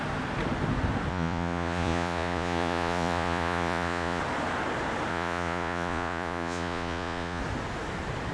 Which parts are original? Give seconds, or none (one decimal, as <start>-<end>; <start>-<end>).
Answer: 0.0-1.1; 4.2-5.1; 7.4-8.3